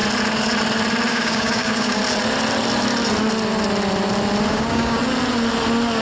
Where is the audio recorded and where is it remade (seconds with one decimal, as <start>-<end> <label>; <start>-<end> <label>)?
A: 0.0-1.1 recorded; 1.1-2.0 remade; 2.0-4.5 recorded; 4.5-5.0 remade; 5.0-6.0 recorded